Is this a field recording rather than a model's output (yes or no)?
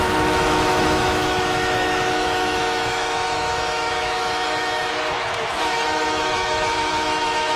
no